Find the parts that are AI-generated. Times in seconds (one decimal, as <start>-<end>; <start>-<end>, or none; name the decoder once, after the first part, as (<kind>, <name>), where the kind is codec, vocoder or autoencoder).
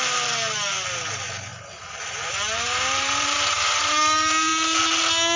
0.0-4.5 (vocoder, BigVGAN v2)